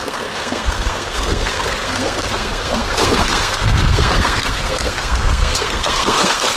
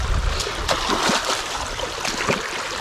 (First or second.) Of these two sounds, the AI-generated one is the first